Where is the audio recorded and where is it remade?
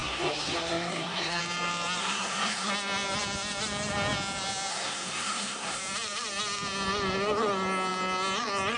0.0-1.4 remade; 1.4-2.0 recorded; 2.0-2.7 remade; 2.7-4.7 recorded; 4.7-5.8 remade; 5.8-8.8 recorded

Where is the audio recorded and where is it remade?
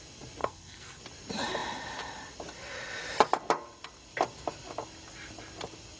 0.0-0.4 recorded; 0.4-1.0 remade; 1.0-6.0 recorded